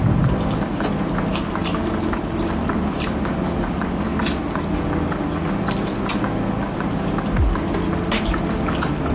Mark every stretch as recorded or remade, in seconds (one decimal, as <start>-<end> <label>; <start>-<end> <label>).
0.0-1.7 recorded; 1.7-4.3 remade; 4.3-9.1 recorded